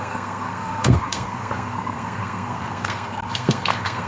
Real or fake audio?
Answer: fake